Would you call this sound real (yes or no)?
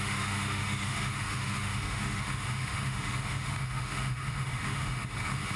no